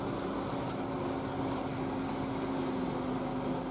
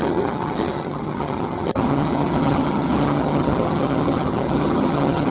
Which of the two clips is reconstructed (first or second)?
second